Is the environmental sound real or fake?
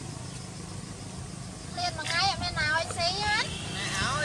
real